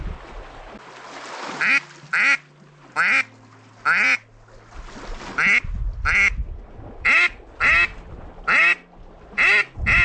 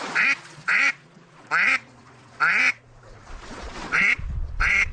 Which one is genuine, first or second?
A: first